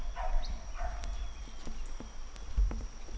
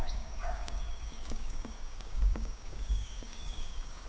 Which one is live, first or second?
first